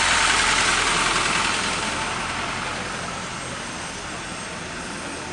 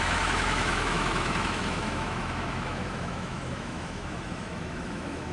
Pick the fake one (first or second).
second